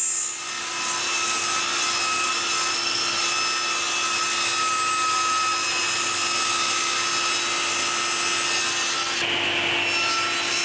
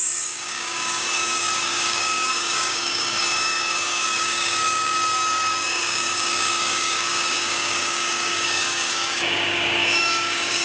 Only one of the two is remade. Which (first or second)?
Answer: second